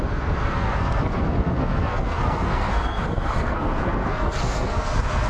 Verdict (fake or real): fake